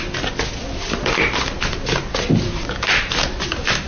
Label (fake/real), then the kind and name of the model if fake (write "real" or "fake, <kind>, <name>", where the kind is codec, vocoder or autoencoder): real